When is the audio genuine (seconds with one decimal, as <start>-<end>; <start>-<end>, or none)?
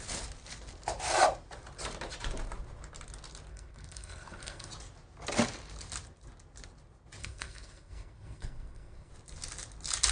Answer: 0.0-3.5; 4.7-7.2; 9.1-10.1